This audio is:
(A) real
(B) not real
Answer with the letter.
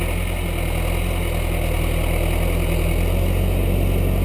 A